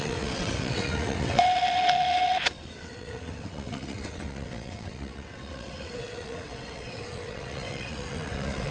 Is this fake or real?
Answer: fake